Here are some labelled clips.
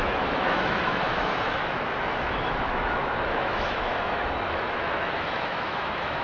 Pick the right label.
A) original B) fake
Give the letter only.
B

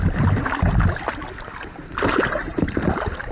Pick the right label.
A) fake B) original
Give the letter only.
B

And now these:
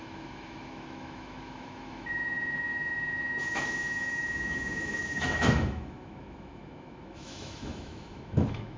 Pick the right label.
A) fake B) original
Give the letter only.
A